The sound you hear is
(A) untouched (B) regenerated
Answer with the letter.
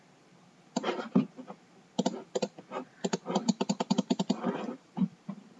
A